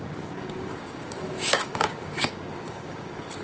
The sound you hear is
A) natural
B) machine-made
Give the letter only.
B